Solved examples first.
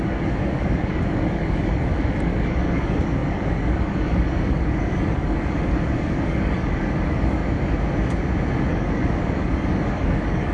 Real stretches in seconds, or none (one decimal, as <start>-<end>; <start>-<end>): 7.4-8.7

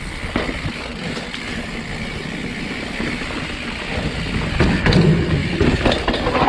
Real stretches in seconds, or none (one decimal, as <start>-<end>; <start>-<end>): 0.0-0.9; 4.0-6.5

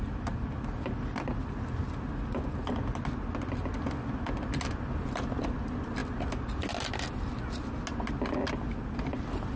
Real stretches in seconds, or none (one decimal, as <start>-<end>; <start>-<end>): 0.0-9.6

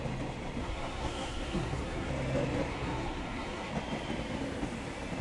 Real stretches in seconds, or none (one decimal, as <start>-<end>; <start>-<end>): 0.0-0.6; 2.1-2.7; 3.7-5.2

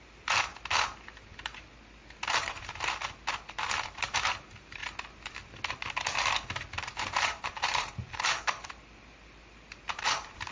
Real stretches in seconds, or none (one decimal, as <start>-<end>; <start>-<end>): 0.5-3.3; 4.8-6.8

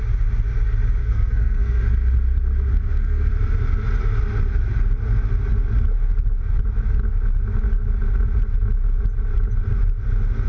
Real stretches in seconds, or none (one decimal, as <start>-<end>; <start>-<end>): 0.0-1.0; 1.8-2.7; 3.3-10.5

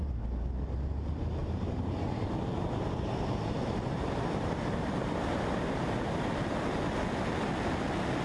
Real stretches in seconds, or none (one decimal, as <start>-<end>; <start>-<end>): 0.0-1.4; 6.3-8.2

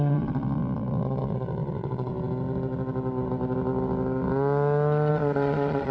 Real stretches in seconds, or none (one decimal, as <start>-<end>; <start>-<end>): 2.1-5.1